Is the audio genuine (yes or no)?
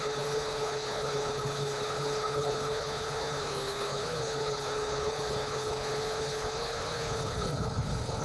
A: no